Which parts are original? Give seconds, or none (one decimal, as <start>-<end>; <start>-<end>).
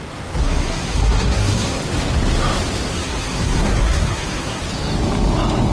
0.0-0.4; 1.8-2.9; 4.6-5.7